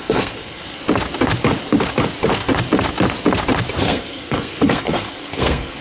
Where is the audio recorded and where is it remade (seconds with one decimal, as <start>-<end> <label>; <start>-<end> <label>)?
0.0-0.8 remade; 0.8-3.8 recorded; 3.8-5.8 remade